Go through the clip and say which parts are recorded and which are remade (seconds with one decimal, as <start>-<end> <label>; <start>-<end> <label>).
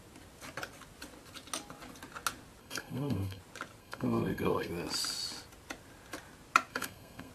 0.0-2.6 recorded; 2.6-3.4 remade; 3.4-3.8 recorded; 3.8-4.7 remade; 4.7-6.7 recorded; 6.7-7.3 remade